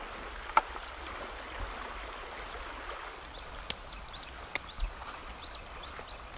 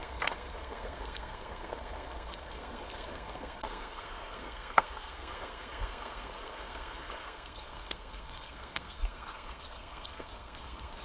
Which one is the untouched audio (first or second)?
first